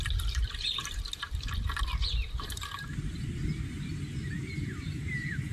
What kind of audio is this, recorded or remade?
remade